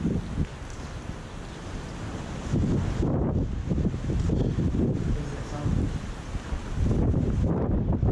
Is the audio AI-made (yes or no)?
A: no